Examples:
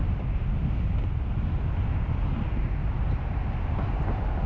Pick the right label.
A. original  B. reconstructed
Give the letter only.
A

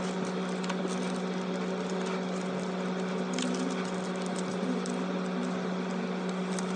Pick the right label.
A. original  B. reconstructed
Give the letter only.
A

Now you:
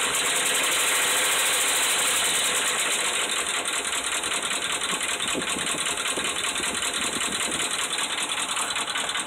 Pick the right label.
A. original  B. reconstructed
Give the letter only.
A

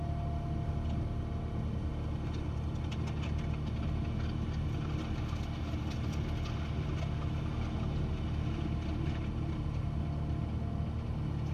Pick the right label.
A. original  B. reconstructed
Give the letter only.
A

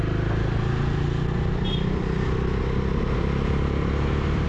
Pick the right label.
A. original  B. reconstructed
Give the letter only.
A